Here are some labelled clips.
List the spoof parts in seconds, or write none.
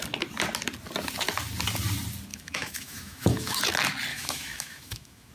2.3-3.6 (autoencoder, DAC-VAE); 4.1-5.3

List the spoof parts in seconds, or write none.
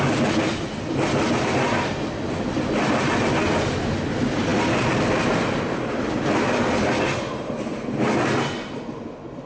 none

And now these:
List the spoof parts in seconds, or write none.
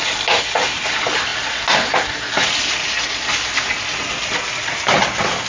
none